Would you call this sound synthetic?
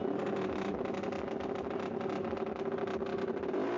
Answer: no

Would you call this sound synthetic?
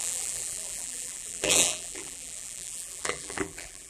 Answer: yes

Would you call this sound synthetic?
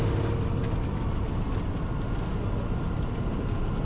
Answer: no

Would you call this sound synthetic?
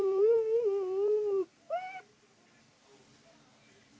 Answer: yes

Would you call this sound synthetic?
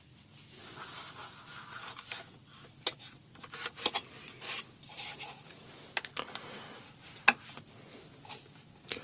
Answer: no